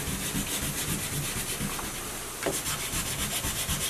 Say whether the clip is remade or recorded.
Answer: recorded